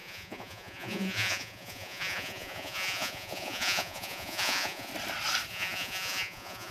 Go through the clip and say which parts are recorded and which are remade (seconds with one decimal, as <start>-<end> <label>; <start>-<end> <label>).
0.0-4.9 remade; 4.9-5.5 recorded; 5.5-6.7 remade